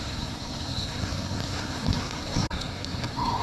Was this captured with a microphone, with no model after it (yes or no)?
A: no